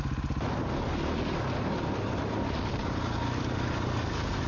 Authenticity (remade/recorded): recorded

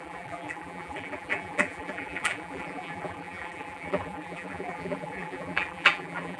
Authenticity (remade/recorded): remade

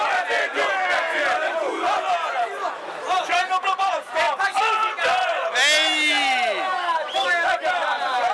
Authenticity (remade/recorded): recorded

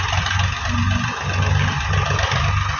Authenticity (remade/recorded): recorded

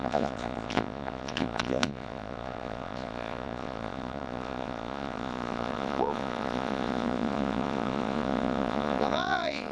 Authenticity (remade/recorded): remade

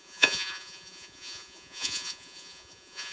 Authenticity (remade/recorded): remade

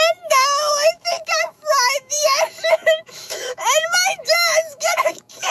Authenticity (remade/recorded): remade